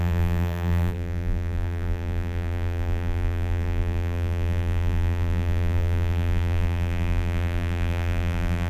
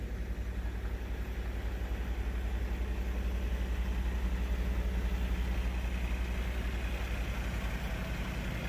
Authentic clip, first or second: second